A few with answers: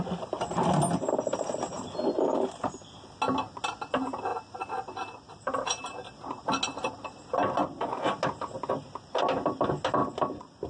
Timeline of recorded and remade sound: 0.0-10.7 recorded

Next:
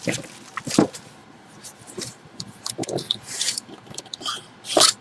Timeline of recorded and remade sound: 0.0-1.2 recorded; 1.2-4.2 remade; 4.2-5.0 recorded